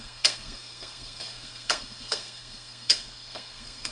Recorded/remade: remade